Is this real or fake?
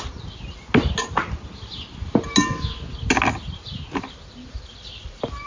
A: real